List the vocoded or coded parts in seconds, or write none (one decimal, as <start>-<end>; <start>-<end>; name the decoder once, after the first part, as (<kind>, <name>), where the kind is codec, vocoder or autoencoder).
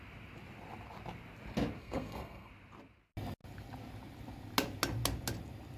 1.8-2.5 (codec, SNAC)